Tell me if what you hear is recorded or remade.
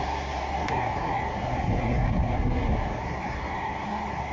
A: remade